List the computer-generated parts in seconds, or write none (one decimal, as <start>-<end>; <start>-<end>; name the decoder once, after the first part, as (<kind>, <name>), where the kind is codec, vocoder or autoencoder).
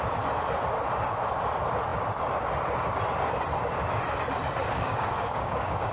4.6-5.9 (codec, DAC)